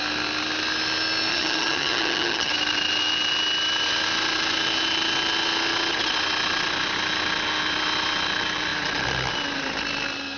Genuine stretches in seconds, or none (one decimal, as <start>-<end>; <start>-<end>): 0.0-1.3; 2.5-10.4